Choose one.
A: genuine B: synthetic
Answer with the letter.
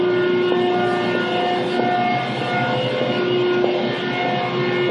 A